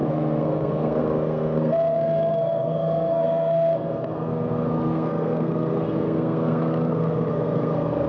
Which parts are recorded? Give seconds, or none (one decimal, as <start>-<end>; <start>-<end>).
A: none